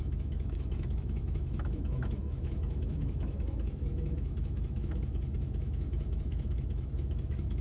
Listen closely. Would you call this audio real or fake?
fake